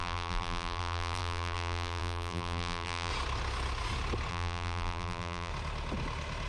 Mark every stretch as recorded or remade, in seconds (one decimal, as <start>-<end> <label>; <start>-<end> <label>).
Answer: 0.0-3.1 remade; 3.1-4.3 recorded; 4.3-5.5 remade; 5.5-6.5 recorded